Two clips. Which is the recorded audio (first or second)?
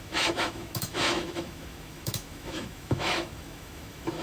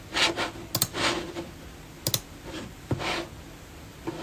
second